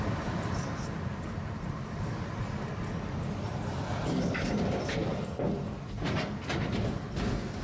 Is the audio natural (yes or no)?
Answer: yes